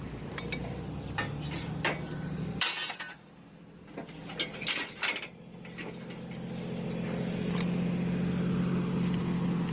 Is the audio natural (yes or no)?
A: yes